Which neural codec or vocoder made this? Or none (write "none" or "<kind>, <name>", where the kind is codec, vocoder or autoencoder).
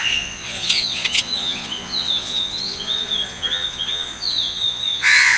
vocoder, Vocos